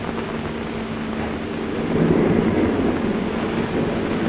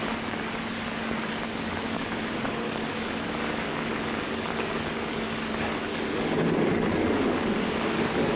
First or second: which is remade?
second